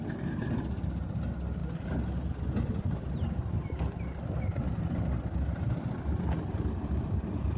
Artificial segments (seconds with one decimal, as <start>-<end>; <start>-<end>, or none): none